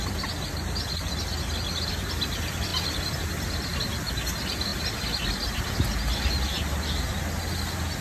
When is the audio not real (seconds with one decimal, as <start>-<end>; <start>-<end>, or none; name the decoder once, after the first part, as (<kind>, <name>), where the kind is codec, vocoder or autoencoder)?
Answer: none